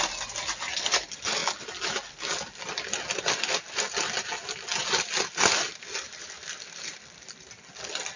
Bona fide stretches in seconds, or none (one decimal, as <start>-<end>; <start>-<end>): 0.0-8.2